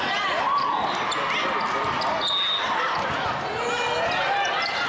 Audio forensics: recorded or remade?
recorded